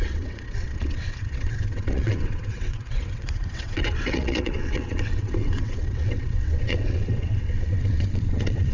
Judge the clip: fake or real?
fake